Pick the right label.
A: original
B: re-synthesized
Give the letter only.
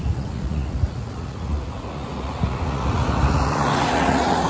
B